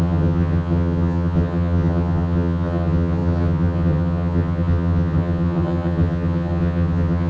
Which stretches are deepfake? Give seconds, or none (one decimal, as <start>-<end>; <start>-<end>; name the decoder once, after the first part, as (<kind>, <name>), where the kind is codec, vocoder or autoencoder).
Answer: 0.0-7.3 (vocoder, HiFi-GAN)